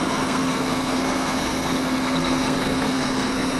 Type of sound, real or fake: fake